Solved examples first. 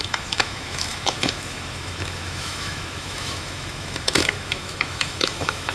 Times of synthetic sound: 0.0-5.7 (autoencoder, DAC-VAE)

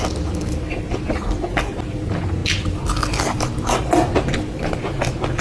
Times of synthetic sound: none

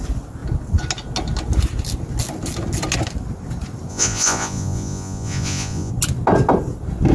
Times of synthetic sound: 3.9-5.9 (vocoder, Vocos)

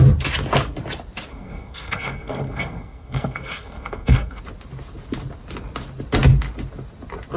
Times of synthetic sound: 1.3-4.4 (codec, SNAC)

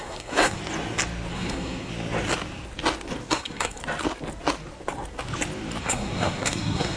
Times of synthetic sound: 0.0-0.6 (codec, SNAC); 1.3-1.9; 3.3-3.8; 5.8-7.0

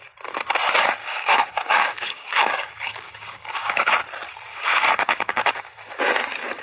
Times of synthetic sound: 1.0-3.9 (codec, DAC); 4.5-5.5